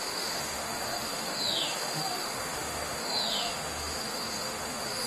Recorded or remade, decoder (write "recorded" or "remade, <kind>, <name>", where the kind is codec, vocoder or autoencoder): remade, autoencoder, DAC-VAE